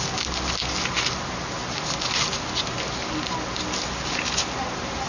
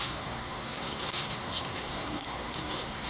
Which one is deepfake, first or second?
second